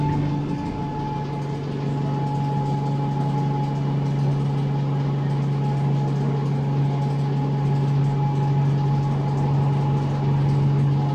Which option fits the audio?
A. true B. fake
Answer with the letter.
A